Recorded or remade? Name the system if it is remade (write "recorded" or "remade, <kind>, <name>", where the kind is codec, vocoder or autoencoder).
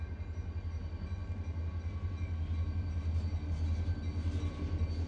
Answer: recorded